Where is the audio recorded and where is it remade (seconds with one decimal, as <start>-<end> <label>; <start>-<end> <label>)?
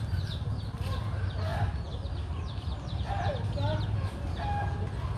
0.0-5.2 recorded